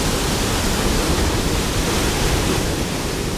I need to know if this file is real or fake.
real